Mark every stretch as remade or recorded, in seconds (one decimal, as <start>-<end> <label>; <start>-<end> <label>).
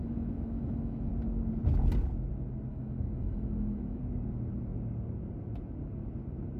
0.0-1.1 remade; 1.1-2.7 recorded; 2.7-4.0 remade; 4.0-6.6 recorded